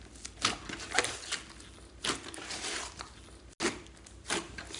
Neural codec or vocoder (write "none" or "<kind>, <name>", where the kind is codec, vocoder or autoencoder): none